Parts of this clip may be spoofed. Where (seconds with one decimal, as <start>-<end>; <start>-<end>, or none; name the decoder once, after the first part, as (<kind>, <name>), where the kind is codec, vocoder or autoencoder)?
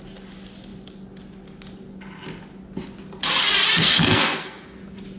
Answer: 3.8-4.8 (codec, SNAC)